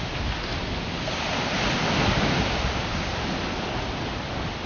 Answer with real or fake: real